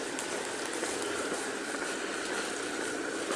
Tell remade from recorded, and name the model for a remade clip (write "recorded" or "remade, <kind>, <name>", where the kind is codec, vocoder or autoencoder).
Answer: recorded